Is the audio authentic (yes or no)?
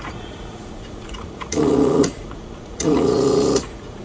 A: no